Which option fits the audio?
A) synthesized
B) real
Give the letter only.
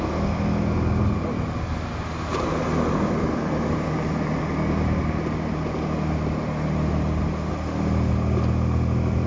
B